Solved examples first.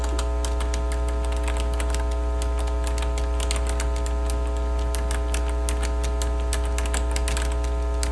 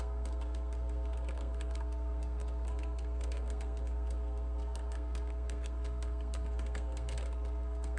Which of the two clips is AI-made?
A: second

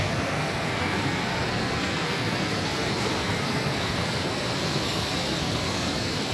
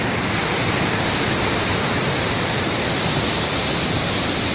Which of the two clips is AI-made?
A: first